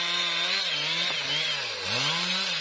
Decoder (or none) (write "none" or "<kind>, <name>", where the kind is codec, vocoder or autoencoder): none